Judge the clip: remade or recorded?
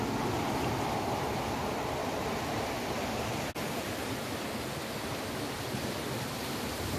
recorded